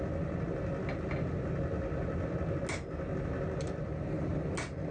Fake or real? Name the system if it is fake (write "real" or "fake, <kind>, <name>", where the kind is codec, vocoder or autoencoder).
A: real